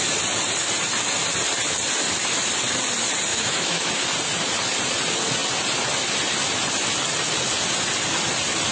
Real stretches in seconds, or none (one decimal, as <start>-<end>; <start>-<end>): 0.0-3.3; 3.9-8.7